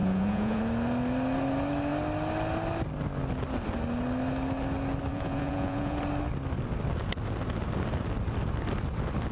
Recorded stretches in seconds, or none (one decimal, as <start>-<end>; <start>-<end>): 0.6-5.1; 6.0-9.3